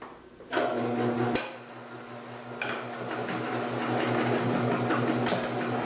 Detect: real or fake real